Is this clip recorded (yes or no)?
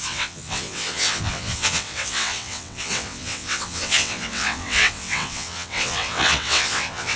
no